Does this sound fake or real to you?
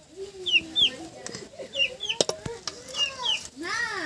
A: real